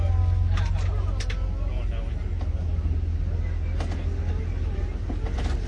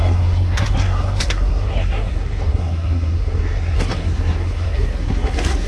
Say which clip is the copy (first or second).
second